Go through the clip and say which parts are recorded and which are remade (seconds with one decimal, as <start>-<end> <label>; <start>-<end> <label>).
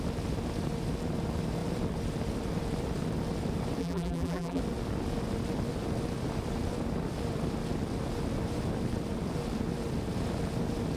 0.0-3.8 recorded; 3.8-4.6 remade; 4.6-11.0 recorded